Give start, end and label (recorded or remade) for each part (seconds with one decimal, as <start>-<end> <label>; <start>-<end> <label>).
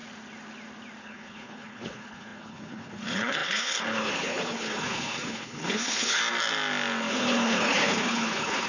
0.0-1.0 recorded; 1.0-6.2 remade; 6.2-7.1 recorded; 7.1-8.7 remade